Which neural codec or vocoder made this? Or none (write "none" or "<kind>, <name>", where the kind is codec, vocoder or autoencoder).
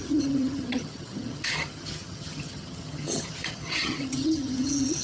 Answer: vocoder, HiFi-GAN